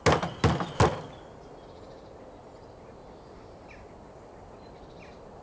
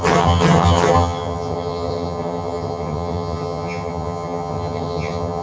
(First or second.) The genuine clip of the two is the first